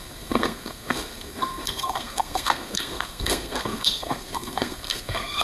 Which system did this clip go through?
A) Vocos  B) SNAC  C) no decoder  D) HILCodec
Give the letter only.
B